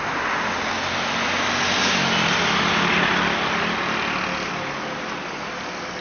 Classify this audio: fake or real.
real